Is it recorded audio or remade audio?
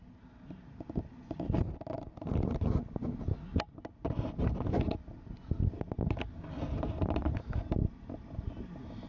recorded